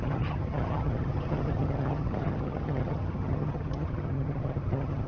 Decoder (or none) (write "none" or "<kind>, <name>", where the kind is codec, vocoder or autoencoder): vocoder, HiFi-GAN